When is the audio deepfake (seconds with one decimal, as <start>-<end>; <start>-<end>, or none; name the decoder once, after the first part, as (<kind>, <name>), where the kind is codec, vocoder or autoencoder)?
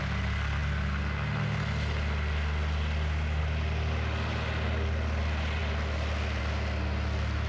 none